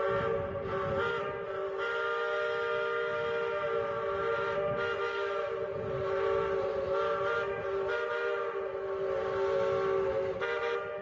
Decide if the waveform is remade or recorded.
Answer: recorded